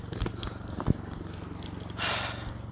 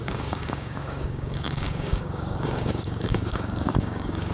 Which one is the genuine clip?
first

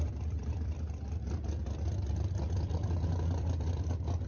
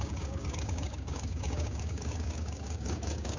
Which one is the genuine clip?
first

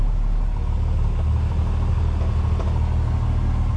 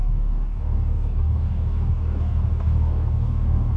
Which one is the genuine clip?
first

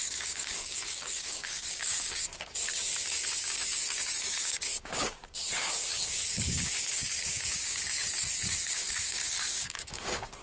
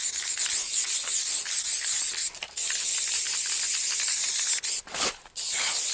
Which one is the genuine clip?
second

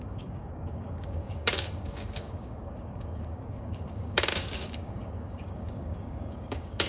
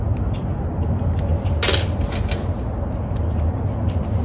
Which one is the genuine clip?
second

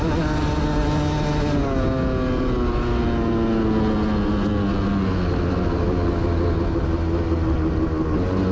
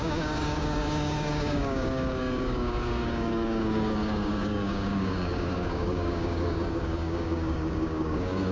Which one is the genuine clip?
first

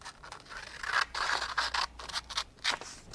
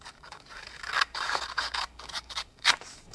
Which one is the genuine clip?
first